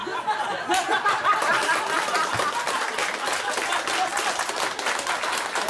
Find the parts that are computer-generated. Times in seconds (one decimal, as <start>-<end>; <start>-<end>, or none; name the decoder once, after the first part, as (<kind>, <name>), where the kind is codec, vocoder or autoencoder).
none